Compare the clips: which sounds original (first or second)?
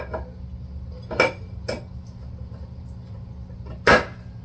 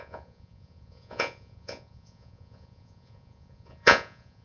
first